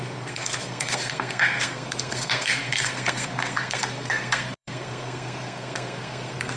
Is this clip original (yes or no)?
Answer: no